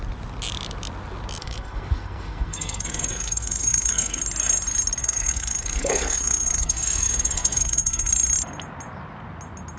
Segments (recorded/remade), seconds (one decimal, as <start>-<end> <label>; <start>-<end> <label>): 0.0-1.4 recorded; 1.4-4.2 remade; 4.2-5.0 recorded; 5.0-8.1 remade; 8.1-9.8 recorded